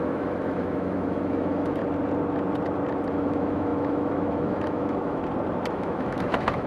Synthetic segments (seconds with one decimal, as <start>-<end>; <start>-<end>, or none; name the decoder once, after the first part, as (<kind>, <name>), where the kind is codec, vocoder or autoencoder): 0.0-1.8 (autoencoder, DAC-VAE); 3.1-5.2; 5.7-6.7